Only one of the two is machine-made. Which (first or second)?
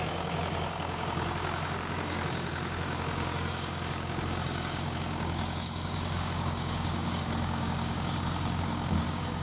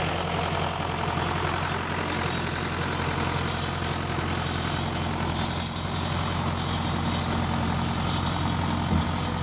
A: first